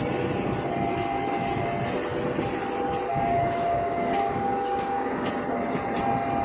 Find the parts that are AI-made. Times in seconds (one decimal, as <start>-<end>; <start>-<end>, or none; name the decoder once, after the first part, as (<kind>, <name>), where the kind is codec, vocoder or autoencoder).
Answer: 3.1-5.3 (codec, DAC)

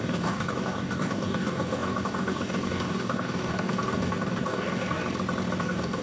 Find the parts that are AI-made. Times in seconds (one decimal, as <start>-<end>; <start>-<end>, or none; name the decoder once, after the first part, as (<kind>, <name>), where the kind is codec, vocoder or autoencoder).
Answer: 0.0-5.0 (codec, DAC); 5.6-6.0

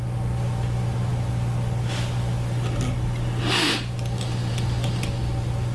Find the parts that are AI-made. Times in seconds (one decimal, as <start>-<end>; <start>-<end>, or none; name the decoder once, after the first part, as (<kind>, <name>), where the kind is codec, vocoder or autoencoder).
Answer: none

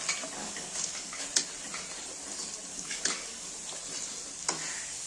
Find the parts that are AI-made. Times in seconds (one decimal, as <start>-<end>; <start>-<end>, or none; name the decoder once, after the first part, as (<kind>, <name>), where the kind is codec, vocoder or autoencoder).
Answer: 0.4-1.2 (codec, DAC); 2.7-3.5

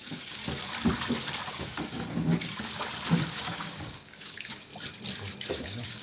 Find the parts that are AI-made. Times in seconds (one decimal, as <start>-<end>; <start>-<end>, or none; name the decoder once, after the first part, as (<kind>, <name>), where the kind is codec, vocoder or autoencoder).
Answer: 0.0-0.4 (codec, DAC); 1.5-2.3; 3.3-4.7; 5.5-6.0